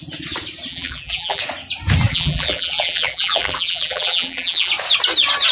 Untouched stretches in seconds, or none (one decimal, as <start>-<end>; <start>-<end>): 0.0-0.7; 1.4-2.1; 4.7-5.5